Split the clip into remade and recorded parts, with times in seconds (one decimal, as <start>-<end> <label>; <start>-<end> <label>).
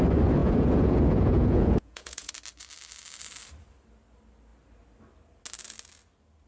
0.0-0.4 recorded; 0.4-2.3 remade; 2.3-6.5 recorded